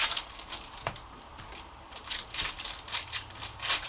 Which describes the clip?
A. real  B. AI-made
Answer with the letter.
B